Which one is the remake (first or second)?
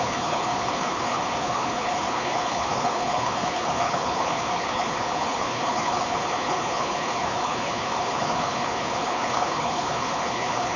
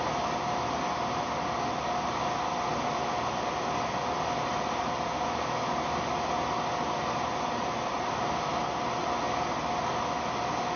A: first